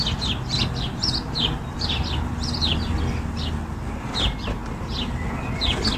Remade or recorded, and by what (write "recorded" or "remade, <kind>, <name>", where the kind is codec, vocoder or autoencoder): recorded